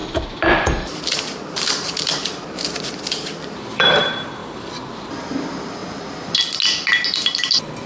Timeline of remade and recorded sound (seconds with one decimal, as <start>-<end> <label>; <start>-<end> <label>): 0.0-1.0 recorded; 1.0-4.4 remade; 4.4-5.2 recorded; 5.2-5.8 remade; 5.8-7.9 recorded